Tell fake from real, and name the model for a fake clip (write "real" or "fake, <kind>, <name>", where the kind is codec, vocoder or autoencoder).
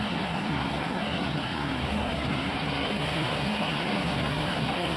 fake, codec, SNAC